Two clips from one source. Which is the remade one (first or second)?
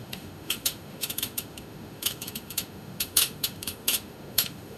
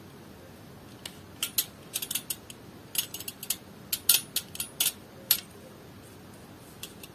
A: first